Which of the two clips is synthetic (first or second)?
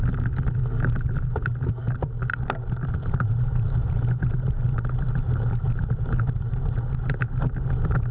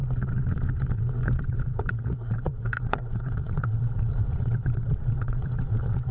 second